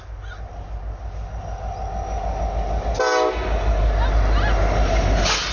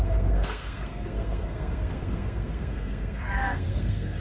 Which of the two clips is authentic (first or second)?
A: first